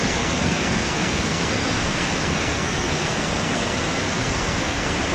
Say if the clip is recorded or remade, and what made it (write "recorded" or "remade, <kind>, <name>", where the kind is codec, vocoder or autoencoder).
remade, codec, SNAC